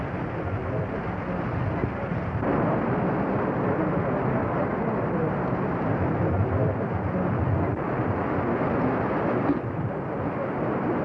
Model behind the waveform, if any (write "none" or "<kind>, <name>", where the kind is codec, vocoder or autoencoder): none